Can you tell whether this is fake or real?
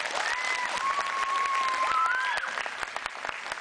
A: real